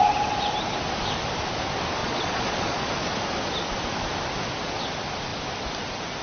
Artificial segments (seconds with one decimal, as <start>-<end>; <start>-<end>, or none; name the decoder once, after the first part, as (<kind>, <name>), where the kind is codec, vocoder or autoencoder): 2.0-2.9 (vocoder, Vocos)